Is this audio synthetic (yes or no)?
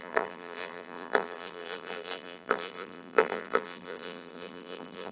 yes